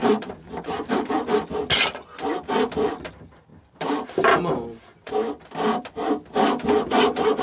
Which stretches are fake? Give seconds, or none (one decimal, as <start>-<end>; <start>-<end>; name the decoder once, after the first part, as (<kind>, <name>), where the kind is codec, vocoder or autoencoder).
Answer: 0.0-1.1 (vocoder, BigVGAN v2); 3.5-5.1